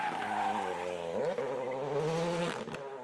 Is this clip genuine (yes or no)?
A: yes